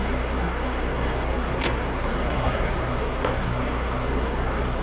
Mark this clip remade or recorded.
remade